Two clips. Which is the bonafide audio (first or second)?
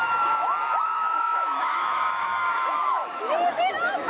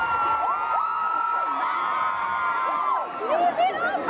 second